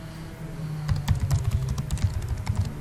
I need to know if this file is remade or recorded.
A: recorded